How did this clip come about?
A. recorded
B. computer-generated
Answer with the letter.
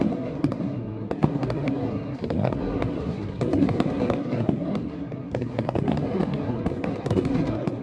B